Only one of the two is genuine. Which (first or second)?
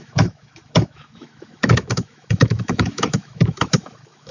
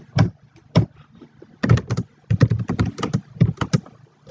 second